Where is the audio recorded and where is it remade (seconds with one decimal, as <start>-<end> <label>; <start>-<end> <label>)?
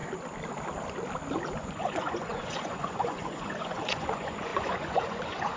0.0-1.6 recorded; 1.6-5.6 remade